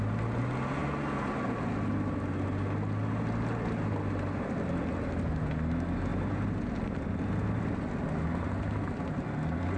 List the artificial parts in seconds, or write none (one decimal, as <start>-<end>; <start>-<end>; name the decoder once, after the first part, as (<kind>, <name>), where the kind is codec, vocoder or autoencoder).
none